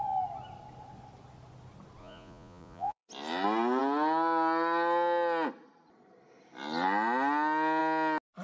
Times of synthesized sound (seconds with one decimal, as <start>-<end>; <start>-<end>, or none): 2.0-3.1